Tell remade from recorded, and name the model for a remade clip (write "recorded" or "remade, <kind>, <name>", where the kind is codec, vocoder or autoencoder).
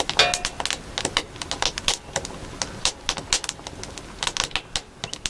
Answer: recorded